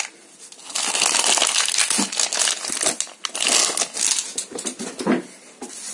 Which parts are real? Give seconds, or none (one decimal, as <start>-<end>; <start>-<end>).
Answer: 0.0-5.9

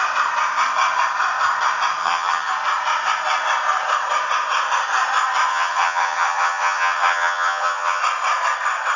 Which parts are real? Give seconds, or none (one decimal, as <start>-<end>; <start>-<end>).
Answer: 0.0-2.0; 2.5-5.5; 8.0-9.0

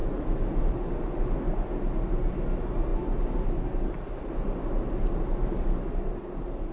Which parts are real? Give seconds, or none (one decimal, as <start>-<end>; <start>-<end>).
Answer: 0.0-6.7

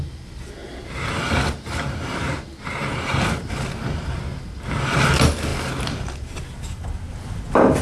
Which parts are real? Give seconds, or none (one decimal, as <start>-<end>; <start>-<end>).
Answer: 0.0-0.6; 3.5-7.8

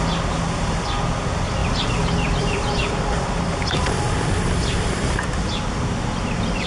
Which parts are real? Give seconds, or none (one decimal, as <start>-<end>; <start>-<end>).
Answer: 0.0-1.6; 5.2-6.7

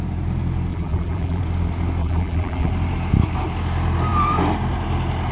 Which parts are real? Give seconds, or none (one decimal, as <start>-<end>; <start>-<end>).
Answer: 0.0-0.7; 1.4-2.0; 2.7-5.3